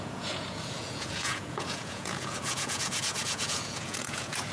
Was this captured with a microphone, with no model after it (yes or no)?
no